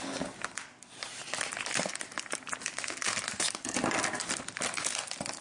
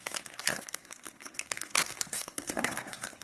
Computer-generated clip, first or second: second